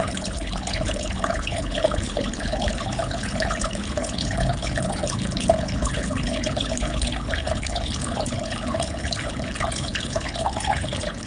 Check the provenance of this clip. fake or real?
fake